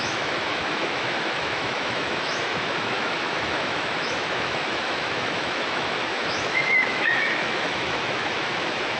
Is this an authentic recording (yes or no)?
no